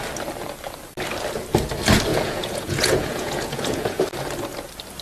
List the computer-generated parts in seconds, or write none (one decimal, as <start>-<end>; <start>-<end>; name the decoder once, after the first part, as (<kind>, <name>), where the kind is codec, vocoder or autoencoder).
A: 2.1-4.0 (vocoder, Vocos)